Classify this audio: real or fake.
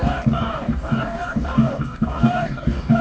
fake